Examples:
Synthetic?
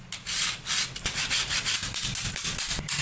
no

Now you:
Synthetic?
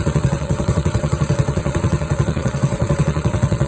yes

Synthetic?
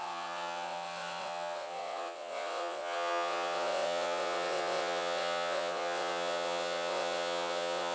yes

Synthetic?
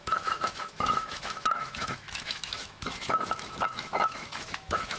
yes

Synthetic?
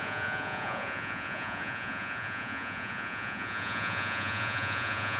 yes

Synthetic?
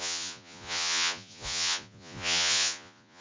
yes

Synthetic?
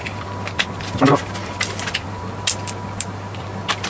no